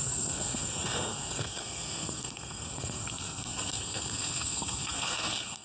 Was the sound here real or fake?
fake